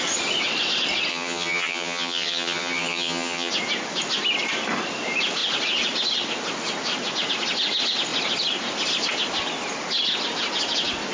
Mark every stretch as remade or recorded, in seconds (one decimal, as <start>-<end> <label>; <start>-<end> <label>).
0.0-1.1 recorded; 1.1-3.5 remade; 3.5-11.1 recorded